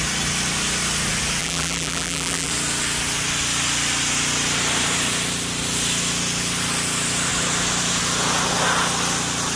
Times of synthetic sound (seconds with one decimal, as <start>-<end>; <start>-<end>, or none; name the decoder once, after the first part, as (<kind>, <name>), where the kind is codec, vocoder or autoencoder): 1.4-2.5 (vocoder, BigVGAN v2)